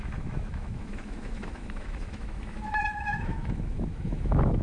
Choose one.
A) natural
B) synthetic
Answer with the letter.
B